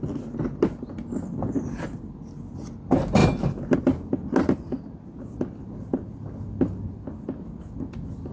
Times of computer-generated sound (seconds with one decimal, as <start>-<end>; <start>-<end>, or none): none